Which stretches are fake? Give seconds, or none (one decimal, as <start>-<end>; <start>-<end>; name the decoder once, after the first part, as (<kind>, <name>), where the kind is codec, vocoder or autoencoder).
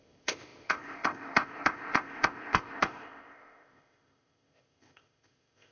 0.0-5.7 (codec, ZipCodec)